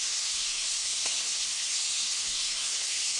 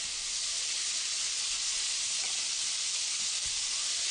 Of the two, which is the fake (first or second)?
first